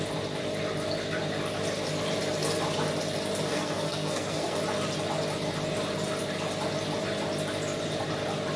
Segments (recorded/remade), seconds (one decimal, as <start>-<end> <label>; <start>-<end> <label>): 0.0-3.5 recorded; 3.5-4.6 remade; 4.6-8.6 recorded